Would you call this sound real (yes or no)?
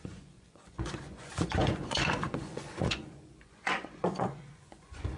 no